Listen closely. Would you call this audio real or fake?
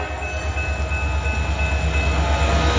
real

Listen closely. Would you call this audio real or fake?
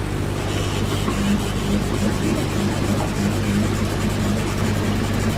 real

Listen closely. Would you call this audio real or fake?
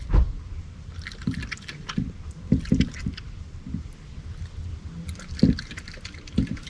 real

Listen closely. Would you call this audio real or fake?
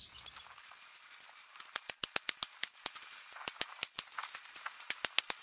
real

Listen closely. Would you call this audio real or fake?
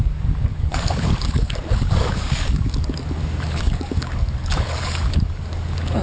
fake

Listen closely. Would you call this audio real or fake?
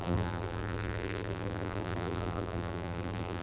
fake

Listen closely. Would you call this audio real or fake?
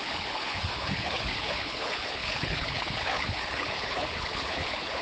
fake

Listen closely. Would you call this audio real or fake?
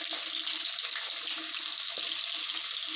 real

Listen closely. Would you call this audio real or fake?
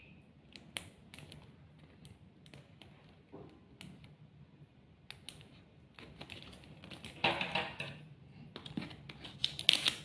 real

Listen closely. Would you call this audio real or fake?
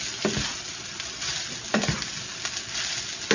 real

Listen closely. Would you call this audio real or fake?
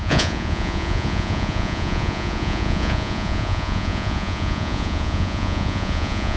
fake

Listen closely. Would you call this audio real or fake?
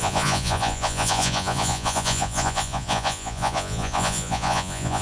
fake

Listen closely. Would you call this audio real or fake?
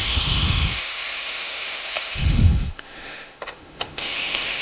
fake